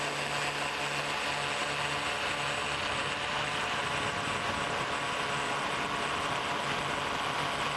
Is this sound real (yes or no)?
yes